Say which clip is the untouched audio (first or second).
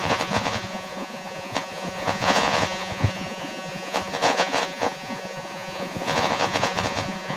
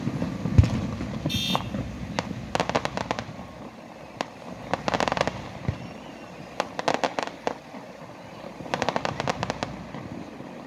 second